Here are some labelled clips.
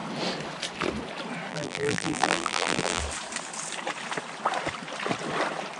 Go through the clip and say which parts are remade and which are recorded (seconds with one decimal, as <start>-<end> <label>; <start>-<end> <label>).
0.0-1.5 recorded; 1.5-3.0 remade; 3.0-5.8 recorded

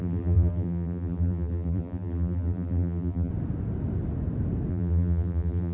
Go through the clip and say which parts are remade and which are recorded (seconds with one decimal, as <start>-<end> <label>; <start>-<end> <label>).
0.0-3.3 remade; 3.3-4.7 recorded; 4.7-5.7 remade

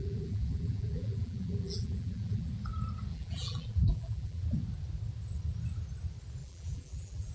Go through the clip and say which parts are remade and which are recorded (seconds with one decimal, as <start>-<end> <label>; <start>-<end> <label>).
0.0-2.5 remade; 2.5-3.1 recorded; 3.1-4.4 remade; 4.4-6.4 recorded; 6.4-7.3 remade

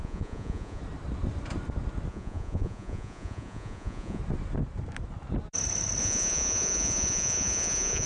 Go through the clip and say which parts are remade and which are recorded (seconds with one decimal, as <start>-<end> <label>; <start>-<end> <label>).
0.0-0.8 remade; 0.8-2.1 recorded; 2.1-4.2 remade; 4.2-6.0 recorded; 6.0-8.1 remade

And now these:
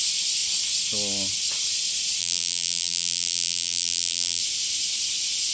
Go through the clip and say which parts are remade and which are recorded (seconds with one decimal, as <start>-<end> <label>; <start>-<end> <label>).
0.0-2.2 recorded; 2.2-4.4 remade; 4.4-5.5 recorded

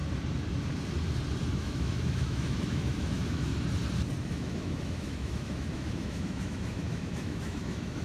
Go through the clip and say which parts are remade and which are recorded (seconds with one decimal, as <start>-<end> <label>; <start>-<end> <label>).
0.0-1.5 recorded; 1.5-3.5 remade; 3.5-4.3 recorded; 4.3-8.0 remade